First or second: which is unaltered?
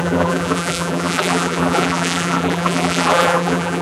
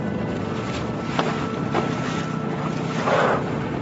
second